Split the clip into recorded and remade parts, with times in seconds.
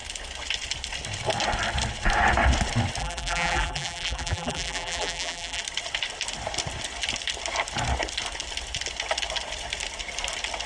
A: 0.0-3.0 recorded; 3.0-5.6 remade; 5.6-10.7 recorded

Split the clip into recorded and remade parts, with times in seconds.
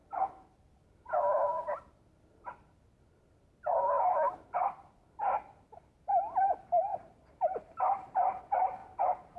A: 0.0-2.3 remade; 2.3-6.9 recorded; 6.9-8.4 remade; 8.4-9.4 recorded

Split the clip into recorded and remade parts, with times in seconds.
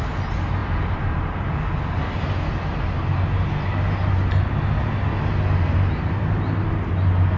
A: 0.0-0.6 recorded; 0.6-1.5 remade; 1.5-7.4 recorded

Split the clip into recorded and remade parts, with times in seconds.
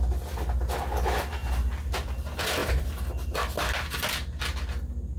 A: 0.0-1.4 recorded; 1.4-1.9 remade; 1.9-5.2 recorded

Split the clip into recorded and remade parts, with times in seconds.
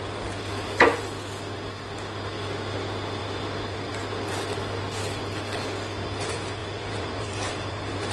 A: 0.0-3.2 recorded; 3.2-3.9 remade; 3.9-6.6 recorded; 6.6-8.1 remade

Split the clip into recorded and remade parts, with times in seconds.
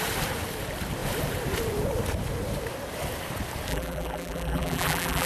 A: 0.0-3.7 recorded; 3.7-5.3 remade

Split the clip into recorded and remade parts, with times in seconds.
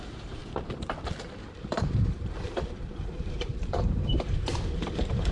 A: 0.0-0.4 remade; 0.4-1.2 recorded; 1.2-5.3 remade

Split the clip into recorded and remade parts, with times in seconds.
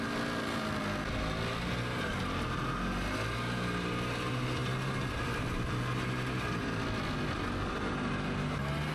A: 0.0-8.9 recorded